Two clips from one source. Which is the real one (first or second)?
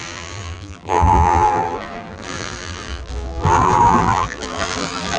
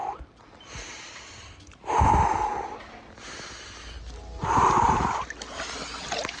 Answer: second